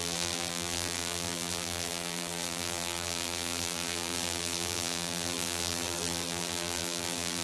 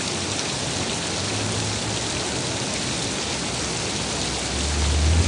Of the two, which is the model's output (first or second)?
first